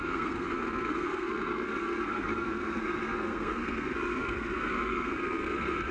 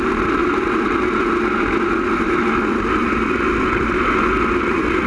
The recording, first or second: second